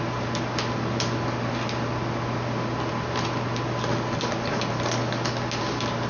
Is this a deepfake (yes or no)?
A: no